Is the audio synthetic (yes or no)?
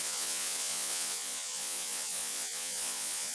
yes